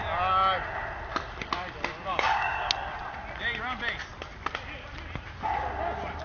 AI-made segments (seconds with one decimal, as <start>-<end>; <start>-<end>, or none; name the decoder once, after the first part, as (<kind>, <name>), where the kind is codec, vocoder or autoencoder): 2.1-2.7 (codec, DAC)